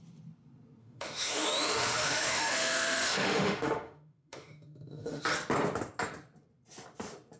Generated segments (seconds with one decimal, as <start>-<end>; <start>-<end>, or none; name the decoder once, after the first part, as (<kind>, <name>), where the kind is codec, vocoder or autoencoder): 0.8-5.2 (autoencoder, DAC-VAE)

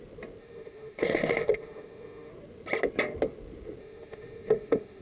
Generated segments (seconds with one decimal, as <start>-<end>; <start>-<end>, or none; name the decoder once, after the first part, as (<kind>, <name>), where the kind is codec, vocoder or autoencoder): 0.4-2.3 (autoencoder, DAC-VAE); 3.8-5.0